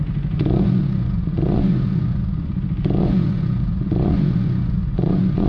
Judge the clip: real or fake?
fake